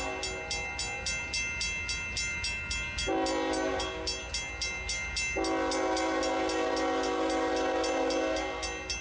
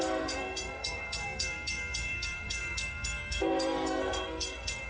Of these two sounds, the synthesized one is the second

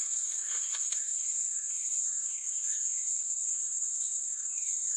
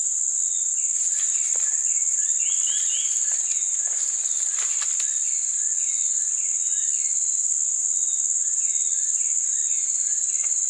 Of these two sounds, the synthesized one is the first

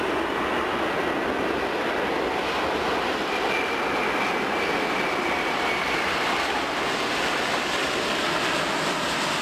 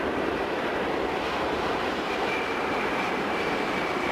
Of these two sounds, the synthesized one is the second